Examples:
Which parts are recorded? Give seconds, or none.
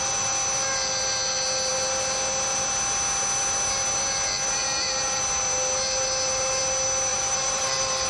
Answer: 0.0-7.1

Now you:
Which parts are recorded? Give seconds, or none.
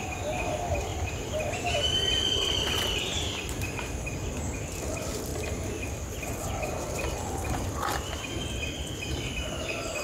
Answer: 0.0-0.9; 2.6-3.1; 3.8-5.3; 9.3-10.0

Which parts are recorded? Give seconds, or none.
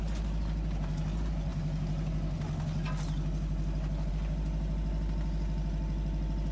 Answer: 0.0-6.5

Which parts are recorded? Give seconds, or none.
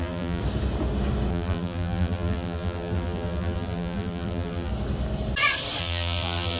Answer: 0.4-1.3; 4.7-5.8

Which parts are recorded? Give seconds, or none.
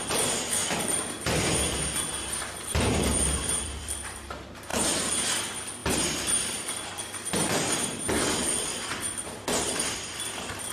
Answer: 4.7-5.3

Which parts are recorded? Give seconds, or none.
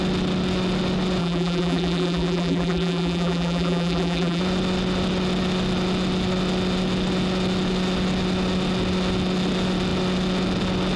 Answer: 0.0-1.2; 4.4-11.0